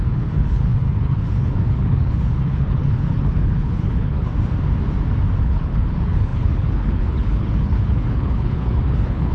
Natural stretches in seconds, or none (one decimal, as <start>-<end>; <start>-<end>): 4.3-5.4